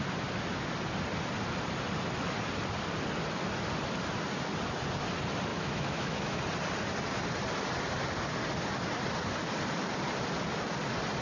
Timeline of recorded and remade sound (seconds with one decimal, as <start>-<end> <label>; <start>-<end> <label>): 0.0-5.5 recorded; 5.5-6.4 remade; 6.4-11.2 recorded